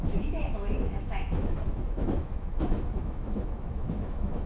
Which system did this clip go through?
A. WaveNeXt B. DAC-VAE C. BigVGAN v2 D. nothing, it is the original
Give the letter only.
B